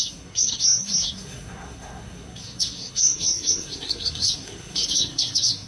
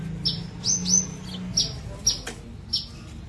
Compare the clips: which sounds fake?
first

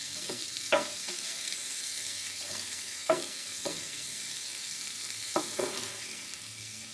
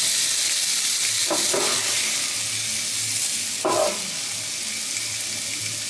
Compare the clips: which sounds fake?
first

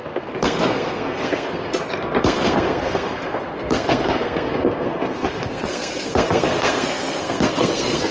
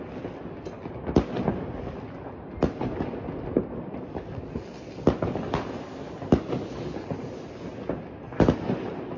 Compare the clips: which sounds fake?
first